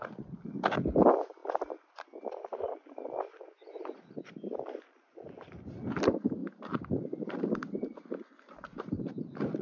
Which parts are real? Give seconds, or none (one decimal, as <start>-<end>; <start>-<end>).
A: 0.0-6.4; 9.1-9.6